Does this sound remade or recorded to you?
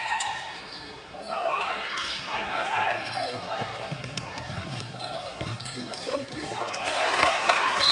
remade